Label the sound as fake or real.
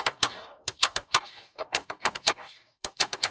fake